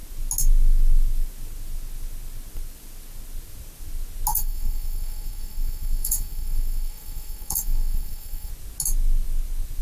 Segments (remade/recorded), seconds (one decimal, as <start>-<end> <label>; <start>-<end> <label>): 0.0-4.3 recorded; 4.3-8.5 remade; 8.5-9.8 recorded